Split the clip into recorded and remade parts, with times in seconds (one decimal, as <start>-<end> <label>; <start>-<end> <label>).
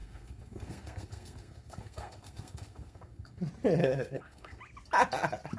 0.0-3.4 remade; 3.4-3.8 recorded; 3.8-4.6 remade; 4.6-5.6 recorded